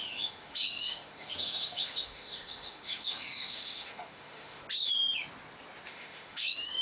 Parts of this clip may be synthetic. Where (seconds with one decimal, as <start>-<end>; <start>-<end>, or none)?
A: 0.0-4.6; 5.9-6.8